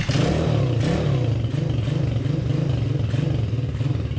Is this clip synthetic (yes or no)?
no